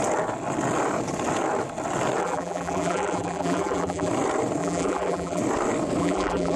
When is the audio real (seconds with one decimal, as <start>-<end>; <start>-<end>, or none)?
0.0-2.2; 4.1-4.6; 5.4-6.0